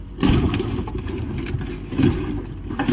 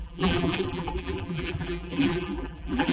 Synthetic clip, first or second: second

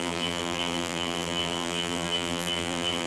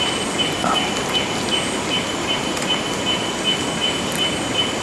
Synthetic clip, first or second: first